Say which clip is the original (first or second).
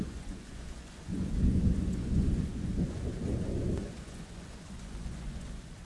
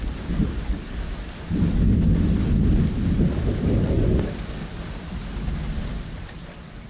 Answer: second